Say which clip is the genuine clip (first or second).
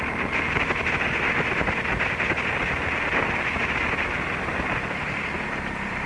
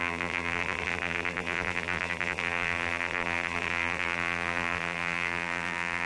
first